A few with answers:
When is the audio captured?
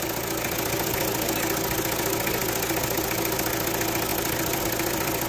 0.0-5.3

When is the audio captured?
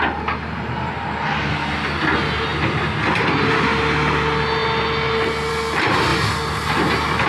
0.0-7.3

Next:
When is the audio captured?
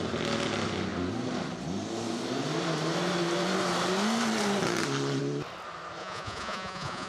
0.0-6.0